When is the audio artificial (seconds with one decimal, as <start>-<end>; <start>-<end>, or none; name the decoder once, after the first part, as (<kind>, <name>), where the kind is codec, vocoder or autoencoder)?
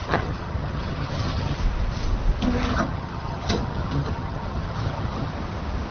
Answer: 0.0-1.6 (vocoder, HiFi-GAN); 2.7-5.3